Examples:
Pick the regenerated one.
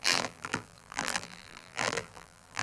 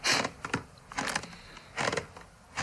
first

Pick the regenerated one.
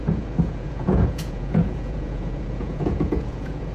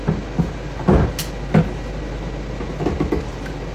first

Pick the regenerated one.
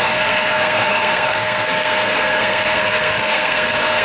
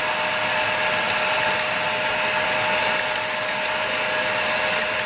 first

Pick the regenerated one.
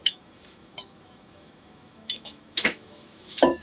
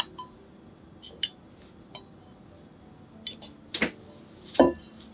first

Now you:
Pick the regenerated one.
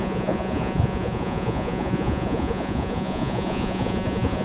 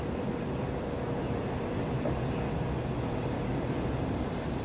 first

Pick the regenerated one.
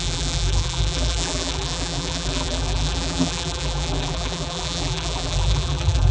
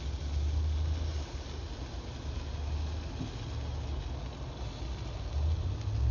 first